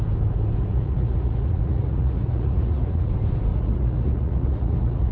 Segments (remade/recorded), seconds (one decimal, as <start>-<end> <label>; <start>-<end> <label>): 0.0-0.7 recorded; 0.7-3.1 remade; 3.1-3.5 recorded; 3.5-5.1 remade